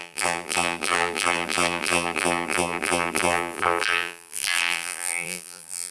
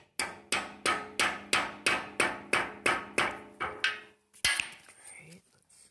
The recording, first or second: second